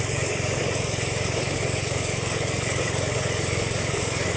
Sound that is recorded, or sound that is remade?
remade